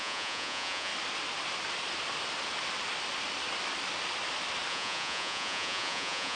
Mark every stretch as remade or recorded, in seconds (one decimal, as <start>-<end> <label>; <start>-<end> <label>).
0.0-0.9 remade; 0.9-4.7 recorded; 4.7-6.4 remade